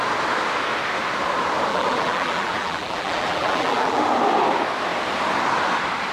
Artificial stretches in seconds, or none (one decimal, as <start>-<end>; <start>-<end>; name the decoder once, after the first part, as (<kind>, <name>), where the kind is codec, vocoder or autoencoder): 1.7-4.0 (vocoder, BigVGAN v2)